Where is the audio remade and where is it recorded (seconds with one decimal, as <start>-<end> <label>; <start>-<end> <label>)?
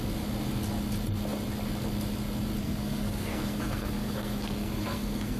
0.0-2.6 recorded; 2.6-5.4 remade